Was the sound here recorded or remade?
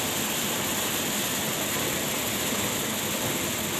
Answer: remade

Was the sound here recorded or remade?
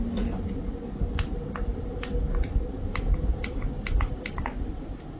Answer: recorded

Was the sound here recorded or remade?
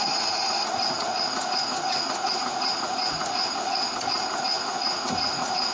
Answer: remade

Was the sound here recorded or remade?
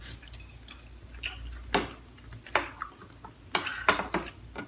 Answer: recorded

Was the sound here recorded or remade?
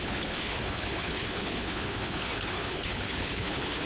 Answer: remade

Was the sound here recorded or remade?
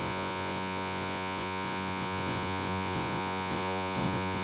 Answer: remade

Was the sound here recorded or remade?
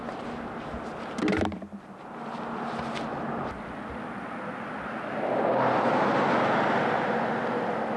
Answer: recorded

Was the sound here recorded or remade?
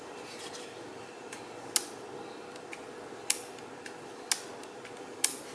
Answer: recorded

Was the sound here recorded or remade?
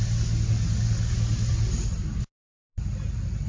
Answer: recorded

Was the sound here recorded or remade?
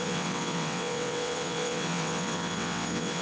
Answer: remade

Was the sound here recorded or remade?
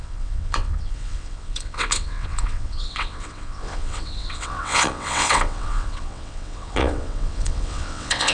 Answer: remade